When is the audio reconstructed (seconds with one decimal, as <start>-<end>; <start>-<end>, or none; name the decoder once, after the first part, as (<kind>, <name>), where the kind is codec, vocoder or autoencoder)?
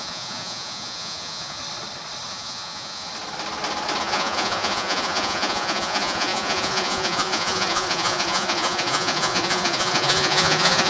0.0-1.6 (vocoder, Vocos); 2.3-3.1; 4.0-10.9